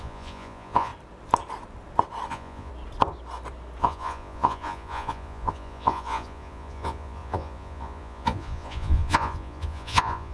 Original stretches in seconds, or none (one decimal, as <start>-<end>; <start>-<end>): 0.9-2.3; 2.7-3.8